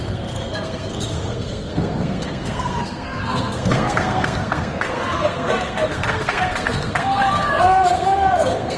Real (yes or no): no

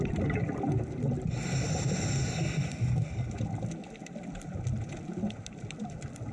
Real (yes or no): yes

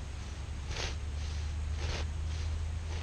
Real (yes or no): yes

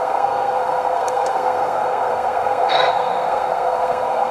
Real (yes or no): no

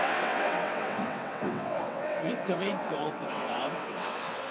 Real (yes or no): no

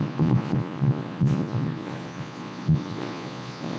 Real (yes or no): no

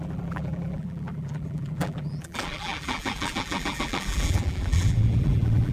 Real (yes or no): no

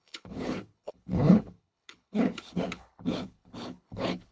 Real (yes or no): no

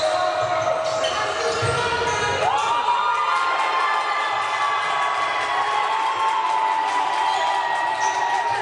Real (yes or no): yes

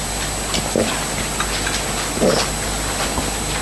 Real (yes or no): yes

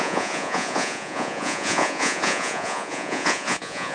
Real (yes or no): no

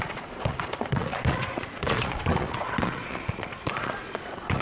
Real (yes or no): no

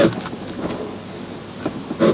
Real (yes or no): yes